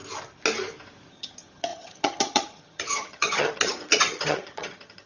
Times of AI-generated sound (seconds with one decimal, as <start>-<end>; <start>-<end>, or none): 1.1-5.1